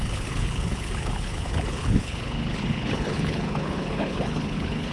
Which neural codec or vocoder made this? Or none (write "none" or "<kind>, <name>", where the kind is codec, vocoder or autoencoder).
codec, HILCodec